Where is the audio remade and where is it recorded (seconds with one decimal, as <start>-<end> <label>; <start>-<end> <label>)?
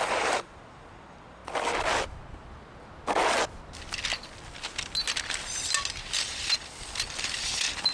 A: 0.0-1.4 remade; 1.4-6.1 recorded; 6.1-7.9 remade